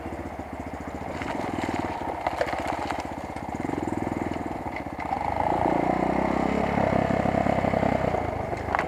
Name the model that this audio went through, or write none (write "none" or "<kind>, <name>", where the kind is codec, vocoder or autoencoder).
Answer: none